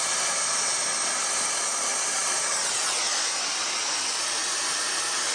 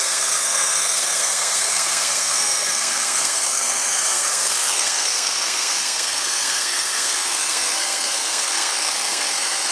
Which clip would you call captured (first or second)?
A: first